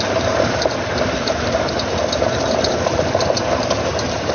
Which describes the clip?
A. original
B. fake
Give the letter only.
B